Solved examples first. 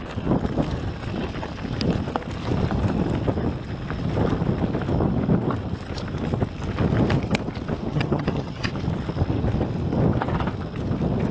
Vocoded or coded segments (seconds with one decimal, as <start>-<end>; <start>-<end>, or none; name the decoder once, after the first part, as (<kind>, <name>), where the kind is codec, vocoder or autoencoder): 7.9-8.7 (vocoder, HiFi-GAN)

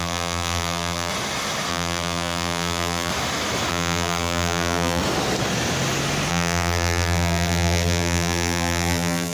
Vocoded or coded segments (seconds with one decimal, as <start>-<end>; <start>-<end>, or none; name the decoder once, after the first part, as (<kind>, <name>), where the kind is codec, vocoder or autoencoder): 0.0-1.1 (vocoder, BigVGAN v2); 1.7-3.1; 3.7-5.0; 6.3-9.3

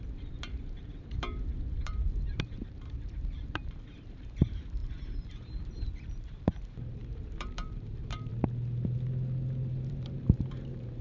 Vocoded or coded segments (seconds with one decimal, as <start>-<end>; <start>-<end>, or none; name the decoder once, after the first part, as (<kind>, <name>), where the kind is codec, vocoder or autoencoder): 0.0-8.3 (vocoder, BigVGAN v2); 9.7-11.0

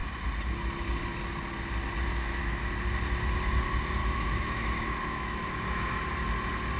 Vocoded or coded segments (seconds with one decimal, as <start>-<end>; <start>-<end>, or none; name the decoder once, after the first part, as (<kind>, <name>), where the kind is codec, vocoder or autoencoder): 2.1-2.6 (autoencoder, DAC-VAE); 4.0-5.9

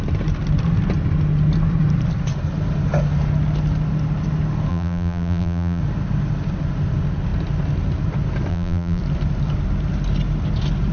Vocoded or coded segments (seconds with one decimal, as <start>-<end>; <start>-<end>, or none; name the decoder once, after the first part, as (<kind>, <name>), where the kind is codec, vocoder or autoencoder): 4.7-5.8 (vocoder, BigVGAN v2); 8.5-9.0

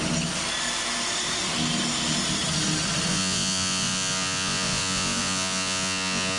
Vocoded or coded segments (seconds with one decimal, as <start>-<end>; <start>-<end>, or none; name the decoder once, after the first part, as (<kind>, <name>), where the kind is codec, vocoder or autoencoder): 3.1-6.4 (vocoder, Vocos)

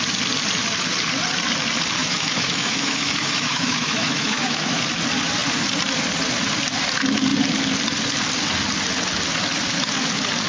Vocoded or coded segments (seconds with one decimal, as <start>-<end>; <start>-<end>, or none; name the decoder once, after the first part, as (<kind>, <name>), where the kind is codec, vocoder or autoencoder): 2.0-4.8 (autoencoder, DAC-VAE)

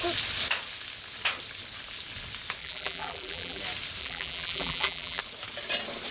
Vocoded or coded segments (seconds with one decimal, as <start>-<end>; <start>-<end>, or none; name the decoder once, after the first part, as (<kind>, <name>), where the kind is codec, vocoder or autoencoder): 2.6-3.6 (vocoder, BigVGAN v2); 4.0-5.2